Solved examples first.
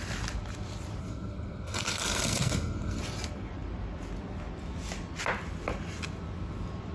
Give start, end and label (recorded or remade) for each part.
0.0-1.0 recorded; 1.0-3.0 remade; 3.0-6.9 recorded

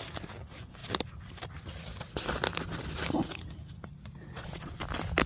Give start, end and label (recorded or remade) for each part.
0.0-3.9 recorded; 3.9-4.7 remade; 4.7-5.3 recorded

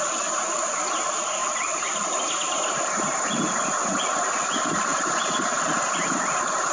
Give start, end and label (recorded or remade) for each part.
0.0-1.4 recorded; 1.4-2.2 remade; 2.2-6.7 recorded

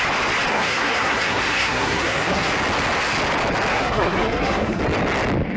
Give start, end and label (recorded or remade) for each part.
0.0-0.5 recorded; 0.5-2.5 remade; 2.5-3.7 recorded; 3.7-4.8 remade; 4.8-5.6 recorded

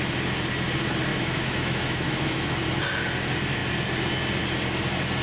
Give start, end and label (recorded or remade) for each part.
0.0-1.1 recorded; 1.1-2.6 remade; 2.6-5.2 recorded

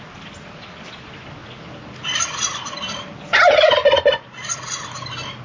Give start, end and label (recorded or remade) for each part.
0.0-5.4 recorded